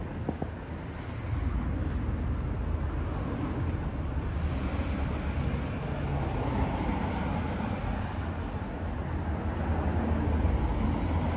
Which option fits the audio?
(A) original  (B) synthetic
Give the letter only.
A